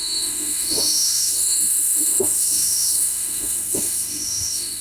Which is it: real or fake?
fake